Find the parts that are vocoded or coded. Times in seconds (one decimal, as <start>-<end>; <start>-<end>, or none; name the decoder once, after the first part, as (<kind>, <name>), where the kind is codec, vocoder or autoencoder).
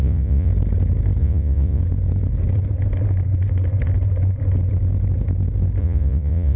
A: 0.0-0.5 (vocoder, Vocos); 1.2-1.8; 5.8-6.6